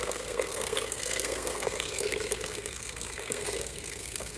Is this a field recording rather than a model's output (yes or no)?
no